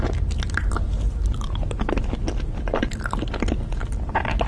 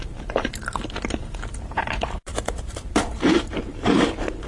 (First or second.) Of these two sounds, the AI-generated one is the second